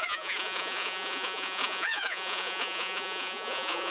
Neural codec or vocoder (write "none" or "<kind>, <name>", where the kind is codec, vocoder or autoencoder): vocoder, Vocos